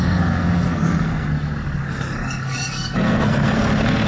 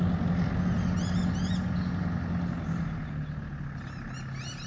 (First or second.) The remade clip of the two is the first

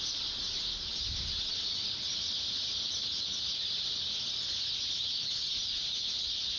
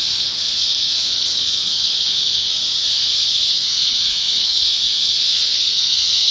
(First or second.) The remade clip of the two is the second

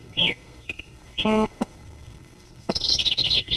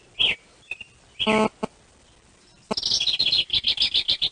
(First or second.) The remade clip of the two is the first